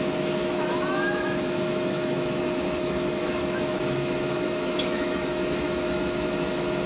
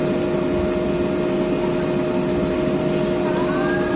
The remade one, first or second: first